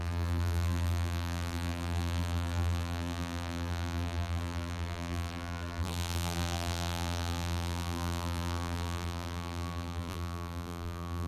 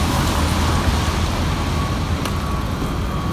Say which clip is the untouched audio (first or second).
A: second